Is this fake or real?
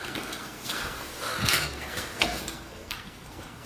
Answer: fake